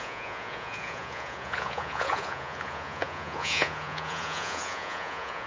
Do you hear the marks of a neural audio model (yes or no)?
yes